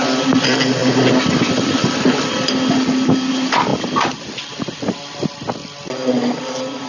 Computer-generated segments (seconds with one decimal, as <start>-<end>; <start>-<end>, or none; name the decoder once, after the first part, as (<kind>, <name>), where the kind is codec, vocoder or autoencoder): none